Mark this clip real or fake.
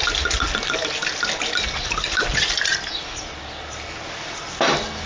real